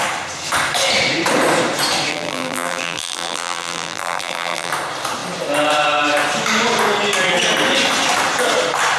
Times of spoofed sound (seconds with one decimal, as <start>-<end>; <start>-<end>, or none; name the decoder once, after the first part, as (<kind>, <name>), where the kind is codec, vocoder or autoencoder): 2.1-4.7 (vocoder, BigVGAN v2)